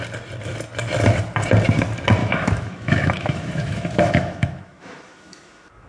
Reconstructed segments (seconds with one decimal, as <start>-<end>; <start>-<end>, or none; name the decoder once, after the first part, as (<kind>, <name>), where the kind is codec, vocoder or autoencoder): 2.2-5.9 (autoencoder, DAC-VAE)